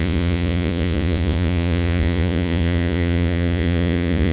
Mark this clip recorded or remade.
remade